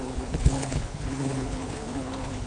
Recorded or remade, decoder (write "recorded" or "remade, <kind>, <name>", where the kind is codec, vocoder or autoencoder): remade, codec, HILCodec